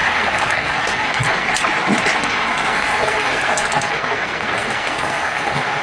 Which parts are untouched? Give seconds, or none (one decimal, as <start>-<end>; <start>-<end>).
1.5-2.2